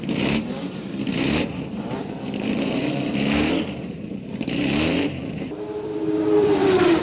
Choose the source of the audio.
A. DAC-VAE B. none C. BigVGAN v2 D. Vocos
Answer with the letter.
C